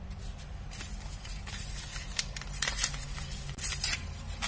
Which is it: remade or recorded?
remade